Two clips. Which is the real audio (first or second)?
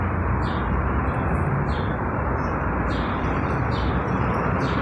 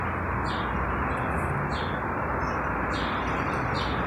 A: second